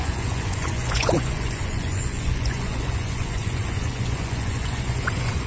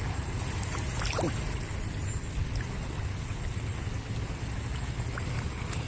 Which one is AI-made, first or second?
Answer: first